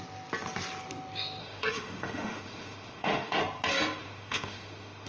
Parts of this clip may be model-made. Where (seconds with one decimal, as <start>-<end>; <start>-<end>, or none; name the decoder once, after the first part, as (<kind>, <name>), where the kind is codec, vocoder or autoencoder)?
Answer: 1.4-3.4 (autoencoder, DAC-VAE); 4.0-5.1